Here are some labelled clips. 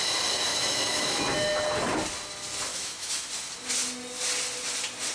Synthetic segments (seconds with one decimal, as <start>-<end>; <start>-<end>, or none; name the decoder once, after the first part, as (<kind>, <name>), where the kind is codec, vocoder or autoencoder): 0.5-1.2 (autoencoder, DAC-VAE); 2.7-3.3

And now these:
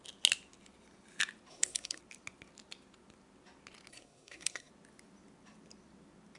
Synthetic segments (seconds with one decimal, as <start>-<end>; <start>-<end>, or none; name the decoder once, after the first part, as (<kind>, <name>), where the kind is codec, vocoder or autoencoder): 1.5-2.0 (codec, SNAC); 3.9-4.7

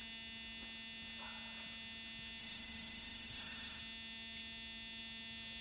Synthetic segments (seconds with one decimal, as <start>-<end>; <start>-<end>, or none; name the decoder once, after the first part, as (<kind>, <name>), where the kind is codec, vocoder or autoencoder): 2.4-3.8 (autoencoder, DAC-VAE)

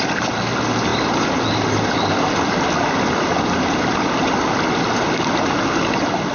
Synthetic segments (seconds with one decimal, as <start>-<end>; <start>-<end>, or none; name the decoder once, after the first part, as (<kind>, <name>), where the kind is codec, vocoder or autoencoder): none

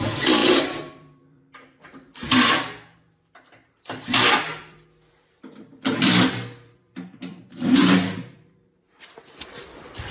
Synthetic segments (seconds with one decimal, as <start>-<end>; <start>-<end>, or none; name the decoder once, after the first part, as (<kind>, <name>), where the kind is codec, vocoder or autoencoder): 0.0-10.1 (vocoder, BigVGAN v2)

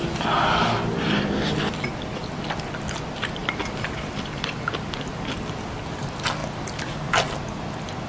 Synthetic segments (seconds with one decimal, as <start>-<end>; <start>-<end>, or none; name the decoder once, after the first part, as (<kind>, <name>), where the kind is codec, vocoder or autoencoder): 3.4-5.1 (vocoder, BigVGAN v2)